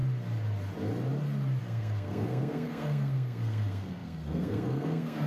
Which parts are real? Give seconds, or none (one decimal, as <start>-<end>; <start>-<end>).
0.0-1.6